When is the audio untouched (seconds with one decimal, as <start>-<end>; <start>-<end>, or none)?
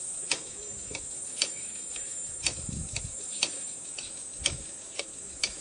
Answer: none